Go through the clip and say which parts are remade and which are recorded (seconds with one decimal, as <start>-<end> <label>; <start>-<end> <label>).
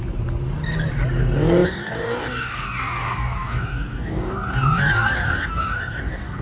0.0-1.2 recorded; 1.2-6.4 remade